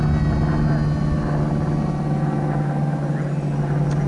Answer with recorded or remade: recorded